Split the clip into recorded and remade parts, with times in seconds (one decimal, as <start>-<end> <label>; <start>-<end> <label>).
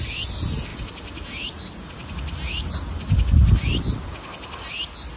0.0-5.2 recorded